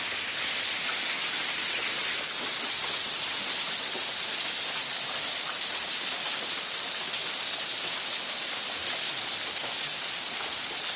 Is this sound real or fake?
real